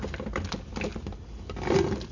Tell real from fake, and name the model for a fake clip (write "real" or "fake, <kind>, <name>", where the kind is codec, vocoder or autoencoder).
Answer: real